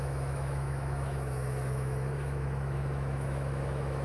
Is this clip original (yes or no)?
no